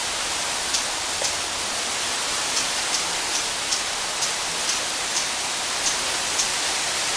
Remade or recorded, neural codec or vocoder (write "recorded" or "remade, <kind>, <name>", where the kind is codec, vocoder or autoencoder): recorded